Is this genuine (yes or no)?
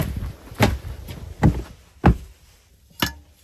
yes